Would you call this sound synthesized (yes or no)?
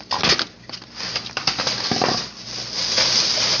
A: no